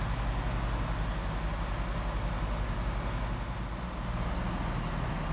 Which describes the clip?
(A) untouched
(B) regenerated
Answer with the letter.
A